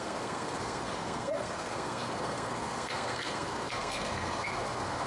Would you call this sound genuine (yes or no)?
no